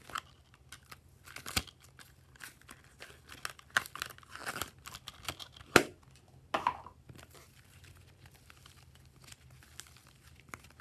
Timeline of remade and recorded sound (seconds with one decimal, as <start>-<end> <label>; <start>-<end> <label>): 0.0-6.9 recorded; 6.9-7.6 remade; 7.6-10.8 recorded